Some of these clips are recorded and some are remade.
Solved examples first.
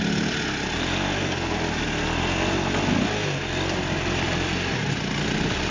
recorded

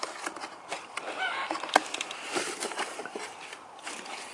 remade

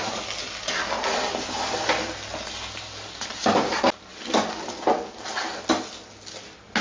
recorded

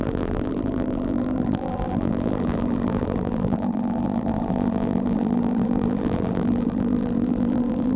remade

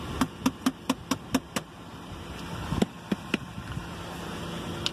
recorded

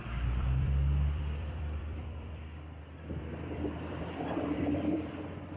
remade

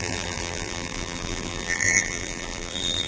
remade